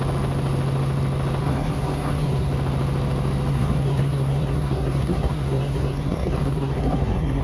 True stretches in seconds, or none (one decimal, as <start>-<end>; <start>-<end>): 0.0-1.4; 2.5-3.5